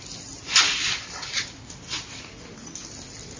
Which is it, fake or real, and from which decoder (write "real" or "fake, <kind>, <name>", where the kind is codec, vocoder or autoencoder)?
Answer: real